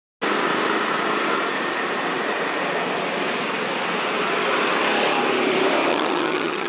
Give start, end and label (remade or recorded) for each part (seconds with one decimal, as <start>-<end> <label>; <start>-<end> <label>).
0.0-5.9 recorded; 5.9-6.7 remade